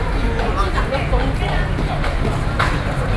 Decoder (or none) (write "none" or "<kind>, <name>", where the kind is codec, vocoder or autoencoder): none